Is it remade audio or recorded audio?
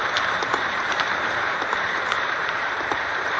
remade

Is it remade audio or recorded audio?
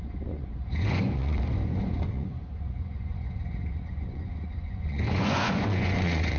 remade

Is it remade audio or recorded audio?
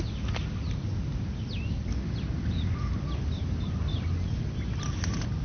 recorded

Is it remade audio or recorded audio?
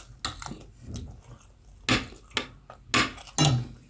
recorded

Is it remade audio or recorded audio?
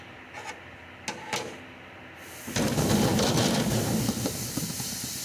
recorded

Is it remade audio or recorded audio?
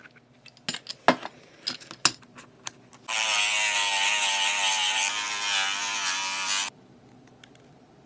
recorded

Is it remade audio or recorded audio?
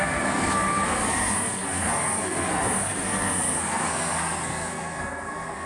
remade